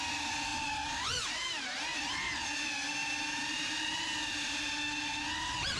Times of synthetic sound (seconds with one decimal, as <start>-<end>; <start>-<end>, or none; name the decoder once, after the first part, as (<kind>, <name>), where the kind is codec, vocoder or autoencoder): 0.5-1.0 (vocoder, BigVGAN v2); 3.0-4.6